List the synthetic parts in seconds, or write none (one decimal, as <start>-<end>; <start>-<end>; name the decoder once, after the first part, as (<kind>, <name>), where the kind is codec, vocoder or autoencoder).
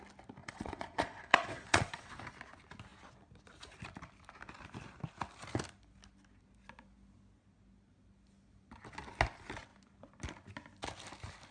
0.4-2.1 (vocoder, Vocos)